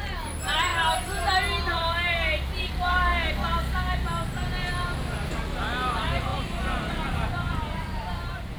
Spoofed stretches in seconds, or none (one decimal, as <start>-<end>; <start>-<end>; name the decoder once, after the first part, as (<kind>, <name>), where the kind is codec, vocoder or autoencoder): 0.0-3.1 (vocoder, BigVGAN v2); 5.7-8.6